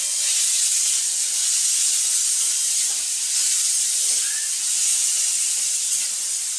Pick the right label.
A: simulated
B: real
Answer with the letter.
B